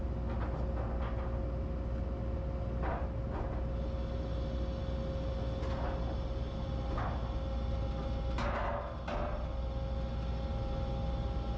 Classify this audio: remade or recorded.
recorded